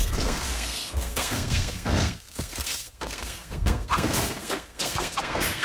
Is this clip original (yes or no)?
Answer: no